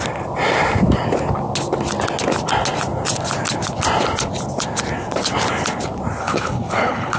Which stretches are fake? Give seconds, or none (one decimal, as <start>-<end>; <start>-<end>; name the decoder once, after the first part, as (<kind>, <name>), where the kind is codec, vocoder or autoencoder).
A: 6.2-7.2 (codec, HILCodec)